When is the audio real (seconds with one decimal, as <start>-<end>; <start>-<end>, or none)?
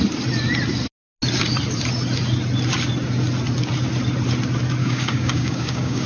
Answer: 0.0-4.8